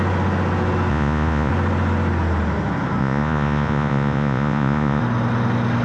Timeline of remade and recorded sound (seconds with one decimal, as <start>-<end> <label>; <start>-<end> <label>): 0.0-0.9 recorded; 0.9-1.5 remade; 1.5-3.0 recorded; 3.0-5.0 remade; 5.0-5.8 recorded